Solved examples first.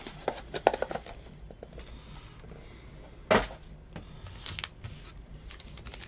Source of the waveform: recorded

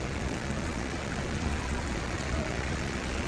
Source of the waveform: remade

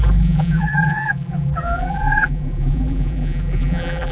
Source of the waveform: remade